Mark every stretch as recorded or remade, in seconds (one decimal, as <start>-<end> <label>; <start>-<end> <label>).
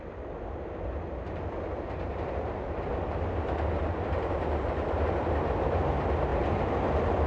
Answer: 0.0-6.3 recorded; 6.3-7.3 remade